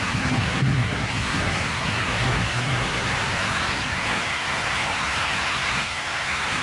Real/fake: fake